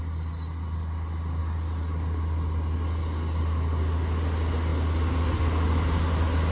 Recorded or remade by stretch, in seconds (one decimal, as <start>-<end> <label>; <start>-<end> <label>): 0.0-6.5 recorded